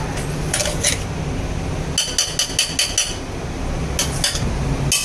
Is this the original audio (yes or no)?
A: yes